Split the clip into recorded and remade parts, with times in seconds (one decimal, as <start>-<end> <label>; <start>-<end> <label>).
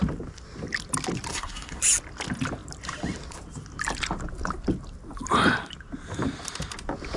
0.0-1.3 recorded; 1.3-1.8 remade; 1.8-7.2 recorded